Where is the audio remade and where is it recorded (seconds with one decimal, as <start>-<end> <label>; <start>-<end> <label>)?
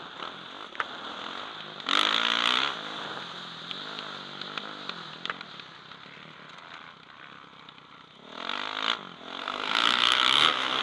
0.0-9.4 recorded; 9.4-10.8 remade